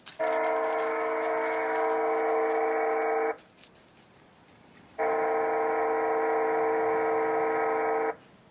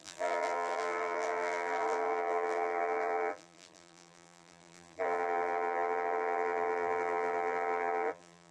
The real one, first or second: first